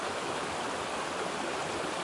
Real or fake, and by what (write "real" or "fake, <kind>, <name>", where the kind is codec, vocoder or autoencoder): real